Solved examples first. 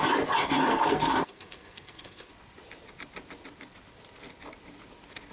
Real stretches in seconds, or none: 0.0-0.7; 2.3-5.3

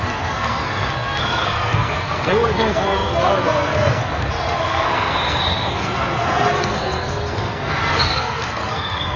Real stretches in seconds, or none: none

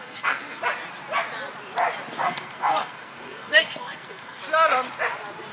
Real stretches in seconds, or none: 0.6-2.2; 4.4-5.5

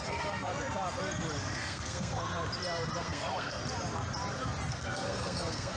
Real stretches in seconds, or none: 0.5-1.4; 2.2-3.0; 3.6-4.7

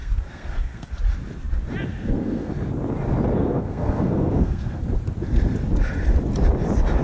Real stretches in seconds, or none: 0.9-1.9; 2.5-3.4; 4.9-7.0

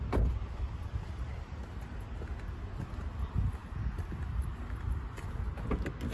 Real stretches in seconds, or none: 0.0-6.1

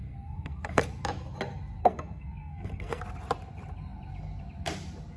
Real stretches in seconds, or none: 0.8-1.8; 3.0-5.2

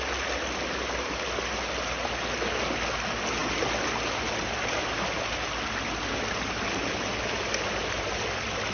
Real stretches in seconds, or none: 0.0-8.7